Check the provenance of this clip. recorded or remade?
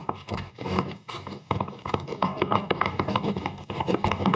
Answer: remade